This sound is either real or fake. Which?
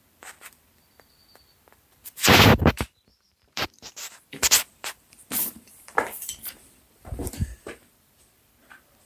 fake